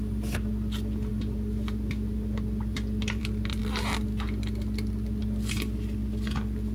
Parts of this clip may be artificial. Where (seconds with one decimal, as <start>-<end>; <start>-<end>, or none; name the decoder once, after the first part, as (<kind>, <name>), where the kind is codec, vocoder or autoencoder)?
none